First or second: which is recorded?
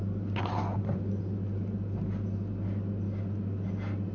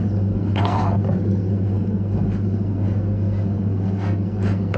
first